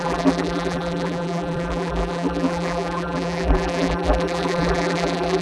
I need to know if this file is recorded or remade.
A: remade